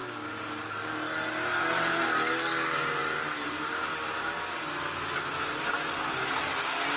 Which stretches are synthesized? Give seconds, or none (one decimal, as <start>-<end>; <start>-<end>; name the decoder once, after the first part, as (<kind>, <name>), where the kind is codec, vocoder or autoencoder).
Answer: none